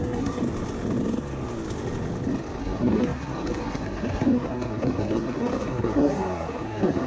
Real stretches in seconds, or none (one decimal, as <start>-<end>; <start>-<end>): 0.4-2.6